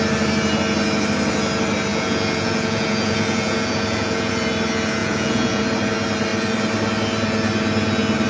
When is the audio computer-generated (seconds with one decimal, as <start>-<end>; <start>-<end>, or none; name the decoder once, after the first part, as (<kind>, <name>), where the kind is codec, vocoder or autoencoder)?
1.9-4.3 (vocoder, Vocos); 5.0-5.6